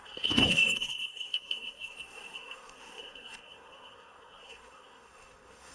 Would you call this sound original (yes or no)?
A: no